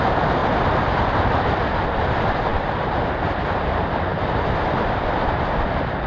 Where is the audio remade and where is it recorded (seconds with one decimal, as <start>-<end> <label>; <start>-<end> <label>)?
0.0-6.1 recorded